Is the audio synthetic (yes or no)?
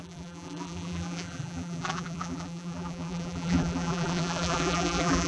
yes